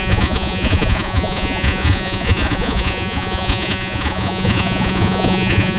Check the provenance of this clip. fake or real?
fake